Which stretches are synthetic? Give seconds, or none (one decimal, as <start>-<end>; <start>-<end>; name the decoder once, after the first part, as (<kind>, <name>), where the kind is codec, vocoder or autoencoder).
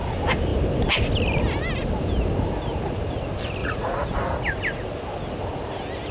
3.6-4.4 (vocoder, Vocos)